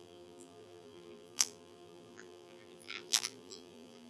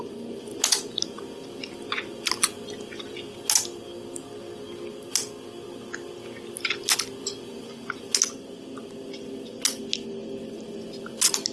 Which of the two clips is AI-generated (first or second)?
first